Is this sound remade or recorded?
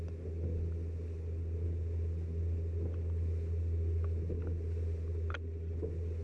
recorded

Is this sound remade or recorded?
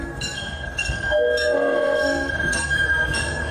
remade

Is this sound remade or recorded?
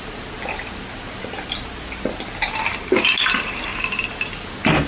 recorded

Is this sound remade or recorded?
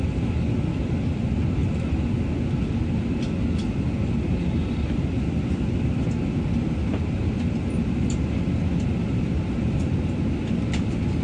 recorded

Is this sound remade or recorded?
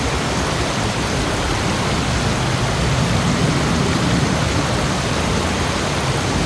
recorded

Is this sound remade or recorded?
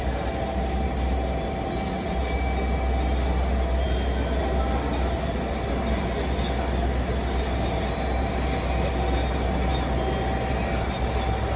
recorded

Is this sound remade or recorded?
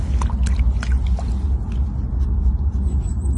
recorded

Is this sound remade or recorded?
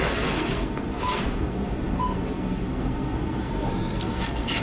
remade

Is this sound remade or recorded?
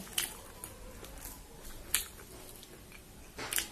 recorded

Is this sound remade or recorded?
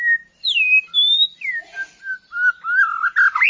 recorded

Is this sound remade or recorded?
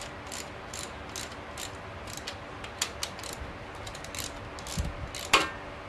recorded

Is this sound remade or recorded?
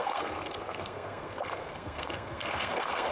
remade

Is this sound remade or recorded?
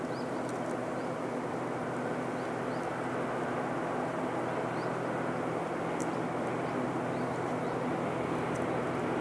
recorded